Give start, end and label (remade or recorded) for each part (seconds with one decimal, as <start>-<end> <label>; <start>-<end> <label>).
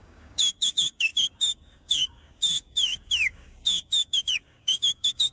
0.0-5.3 remade